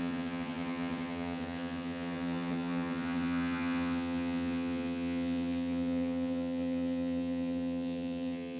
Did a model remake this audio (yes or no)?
yes